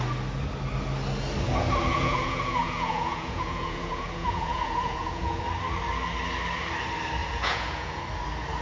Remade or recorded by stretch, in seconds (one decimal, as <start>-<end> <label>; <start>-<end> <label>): 0.0-1.9 recorded; 1.9-5.4 remade; 5.4-7.2 recorded; 7.2-8.0 remade; 8.0-8.6 recorded